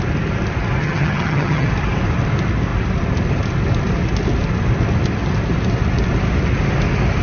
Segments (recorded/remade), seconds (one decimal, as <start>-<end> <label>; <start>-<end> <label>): 0.0-0.8 recorded; 0.8-1.7 remade; 1.7-7.2 recorded